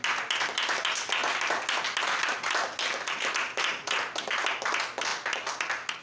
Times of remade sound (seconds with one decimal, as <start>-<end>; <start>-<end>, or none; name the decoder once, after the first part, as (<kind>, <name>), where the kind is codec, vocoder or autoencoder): none